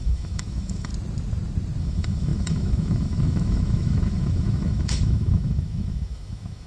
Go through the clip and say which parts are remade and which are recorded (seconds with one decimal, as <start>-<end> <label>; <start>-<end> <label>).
0.0-0.9 remade; 0.9-1.8 recorded; 1.8-6.7 remade